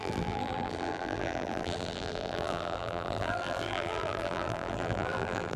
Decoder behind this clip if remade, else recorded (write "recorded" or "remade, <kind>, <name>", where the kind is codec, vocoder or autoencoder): remade, vocoder, BigVGAN v2